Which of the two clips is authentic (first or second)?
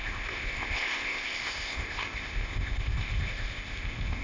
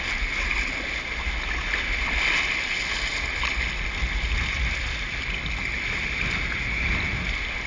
second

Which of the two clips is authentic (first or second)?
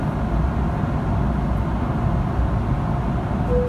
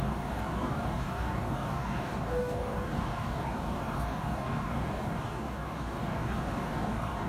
first